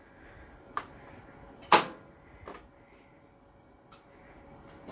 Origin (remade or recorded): recorded